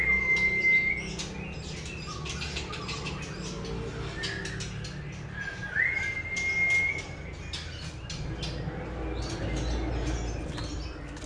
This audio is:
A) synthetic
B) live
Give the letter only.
B